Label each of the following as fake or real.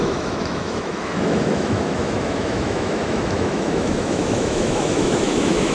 fake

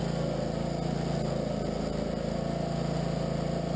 real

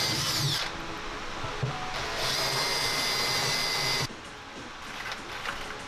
real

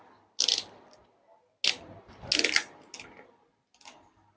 real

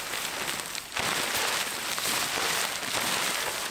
real